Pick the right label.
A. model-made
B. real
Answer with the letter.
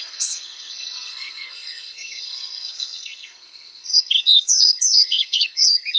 A